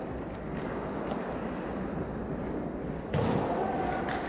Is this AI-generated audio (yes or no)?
no